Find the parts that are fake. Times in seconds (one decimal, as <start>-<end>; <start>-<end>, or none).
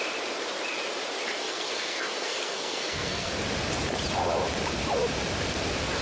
1.4-3.3